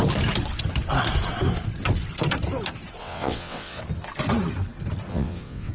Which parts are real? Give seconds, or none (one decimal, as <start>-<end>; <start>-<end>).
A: 0.0-3.0; 3.8-5.1

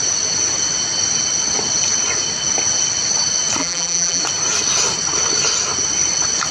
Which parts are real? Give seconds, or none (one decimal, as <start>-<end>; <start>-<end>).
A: 0.0-3.6; 4.2-6.5